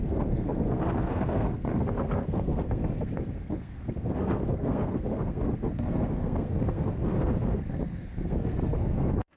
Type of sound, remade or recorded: remade